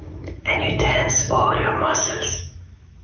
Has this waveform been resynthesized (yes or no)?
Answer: yes